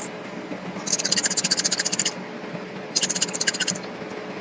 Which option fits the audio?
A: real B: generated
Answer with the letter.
A